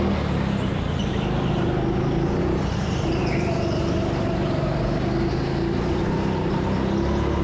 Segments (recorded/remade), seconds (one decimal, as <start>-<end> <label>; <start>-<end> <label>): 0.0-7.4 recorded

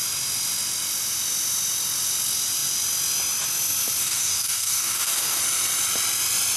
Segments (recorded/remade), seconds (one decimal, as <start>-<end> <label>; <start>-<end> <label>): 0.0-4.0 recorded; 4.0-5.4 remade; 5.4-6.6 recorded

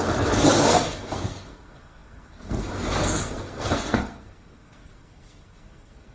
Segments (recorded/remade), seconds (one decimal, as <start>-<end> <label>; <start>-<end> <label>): 0.0-6.1 remade

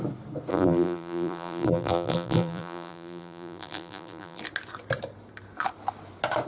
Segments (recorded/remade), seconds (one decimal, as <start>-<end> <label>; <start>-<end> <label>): 0.0-0.5 recorded; 0.5-4.4 remade; 4.4-6.5 recorded

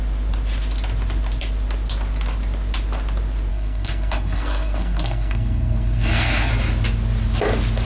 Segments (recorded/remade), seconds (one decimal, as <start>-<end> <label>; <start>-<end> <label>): 0.0-3.5 recorded; 3.5-6.5 remade; 6.5-7.8 recorded